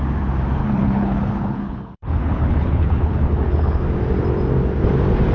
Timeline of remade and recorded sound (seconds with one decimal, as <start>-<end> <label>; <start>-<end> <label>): 0.0-0.6 recorded; 0.6-3.8 remade; 3.8-5.3 recorded